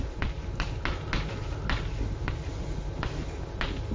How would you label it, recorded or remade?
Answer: recorded